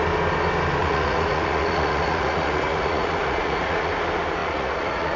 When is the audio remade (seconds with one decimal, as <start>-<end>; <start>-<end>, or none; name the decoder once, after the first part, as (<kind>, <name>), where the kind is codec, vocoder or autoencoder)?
0.8-3.9 (vocoder, Vocos); 4.4-5.2

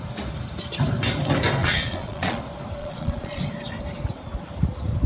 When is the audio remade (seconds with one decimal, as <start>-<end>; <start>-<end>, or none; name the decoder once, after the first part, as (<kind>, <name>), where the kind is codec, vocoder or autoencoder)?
1.6-2.4 (vocoder, Vocos); 2.8-3.4

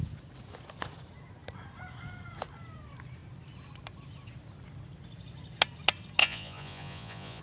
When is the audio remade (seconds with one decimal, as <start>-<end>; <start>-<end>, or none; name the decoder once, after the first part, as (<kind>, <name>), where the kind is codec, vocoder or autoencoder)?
6.2-7.4 (vocoder, Vocos)

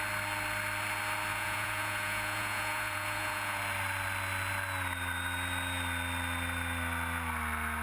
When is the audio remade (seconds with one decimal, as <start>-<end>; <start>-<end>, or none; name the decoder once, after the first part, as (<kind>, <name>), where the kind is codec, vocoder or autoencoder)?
1.3-3.6 (vocoder, Vocos)

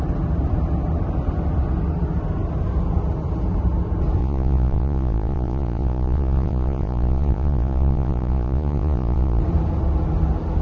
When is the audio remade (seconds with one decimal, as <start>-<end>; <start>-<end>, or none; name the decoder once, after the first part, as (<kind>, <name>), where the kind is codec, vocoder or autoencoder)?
4.2-9.4 (vocoder, Vocos)

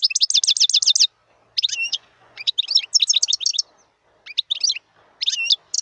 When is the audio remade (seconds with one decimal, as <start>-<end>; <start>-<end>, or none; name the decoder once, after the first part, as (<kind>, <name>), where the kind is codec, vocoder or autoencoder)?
1.9-2.5 (vocoder, Vocos)

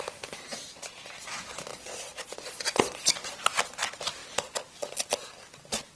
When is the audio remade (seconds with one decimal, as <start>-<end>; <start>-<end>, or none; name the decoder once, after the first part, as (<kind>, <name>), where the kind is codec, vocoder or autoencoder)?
1.7-3.0 (vocoder, Vocos)

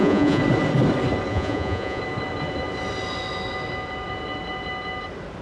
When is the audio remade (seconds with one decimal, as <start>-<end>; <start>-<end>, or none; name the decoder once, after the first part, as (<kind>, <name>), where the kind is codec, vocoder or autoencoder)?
0.0-0.4 (vocoder, Vocos); 1.3-2.0